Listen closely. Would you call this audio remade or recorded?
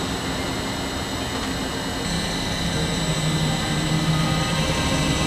recorded